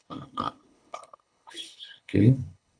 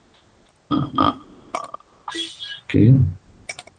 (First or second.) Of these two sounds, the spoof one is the first